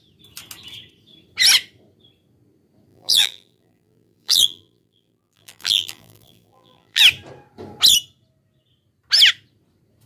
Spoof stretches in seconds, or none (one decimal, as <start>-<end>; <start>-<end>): 2.9-7.0